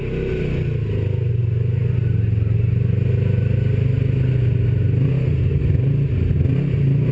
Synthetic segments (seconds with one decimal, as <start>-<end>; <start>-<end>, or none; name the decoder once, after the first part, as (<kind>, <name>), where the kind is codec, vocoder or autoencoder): none